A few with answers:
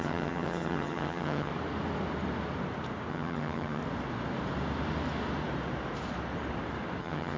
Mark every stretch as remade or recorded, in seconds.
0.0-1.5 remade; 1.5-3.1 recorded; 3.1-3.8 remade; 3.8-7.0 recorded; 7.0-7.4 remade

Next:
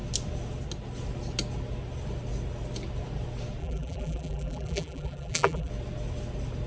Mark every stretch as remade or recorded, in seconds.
0.0-3.6 recorded; 3.6-5.7 remade; 5.7-6.7 recorded

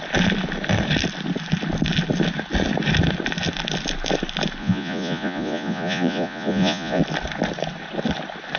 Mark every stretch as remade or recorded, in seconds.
0.0-4.6 recorded; 4.6-7.0 remade; 7.0-8.6 recorded

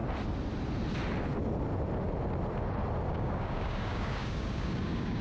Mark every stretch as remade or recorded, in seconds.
0.0-3.1 recorded; 3.1-5.2 remade